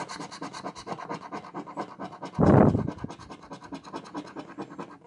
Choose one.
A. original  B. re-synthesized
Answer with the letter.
A